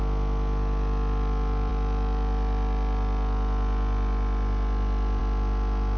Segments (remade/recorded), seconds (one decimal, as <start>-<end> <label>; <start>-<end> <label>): 0.0-6.0 recorded